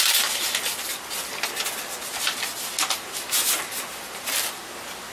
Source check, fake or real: real